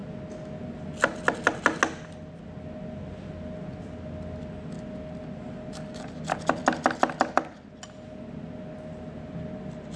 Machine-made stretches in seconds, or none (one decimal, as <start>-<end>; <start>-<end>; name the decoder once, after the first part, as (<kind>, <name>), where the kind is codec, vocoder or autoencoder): none